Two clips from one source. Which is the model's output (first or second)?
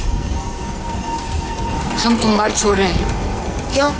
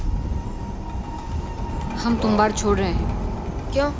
first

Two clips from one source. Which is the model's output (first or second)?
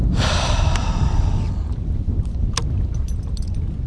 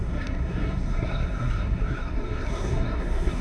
second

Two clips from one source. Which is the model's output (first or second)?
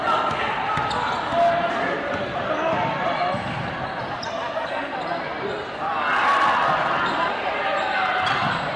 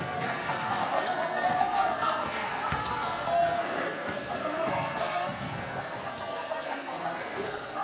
second